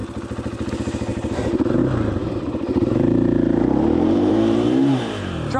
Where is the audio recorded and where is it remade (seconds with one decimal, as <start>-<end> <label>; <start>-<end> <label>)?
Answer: 0.0-1.1 recorded; 1.1-1.8 remade; 1.8-2.2 recorded; 2.2-5.6 remade